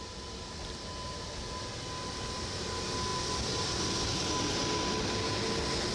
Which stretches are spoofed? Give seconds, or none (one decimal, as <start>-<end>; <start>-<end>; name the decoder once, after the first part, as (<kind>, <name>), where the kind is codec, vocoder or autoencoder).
none